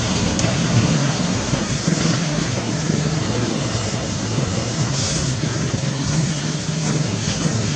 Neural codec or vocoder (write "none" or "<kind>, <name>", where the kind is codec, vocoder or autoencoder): codec, SNAC